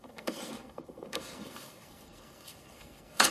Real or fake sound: fake